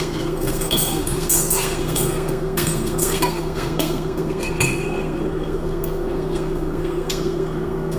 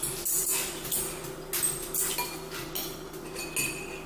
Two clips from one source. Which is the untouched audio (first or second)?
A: second